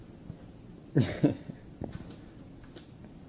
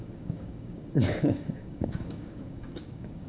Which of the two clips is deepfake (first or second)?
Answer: second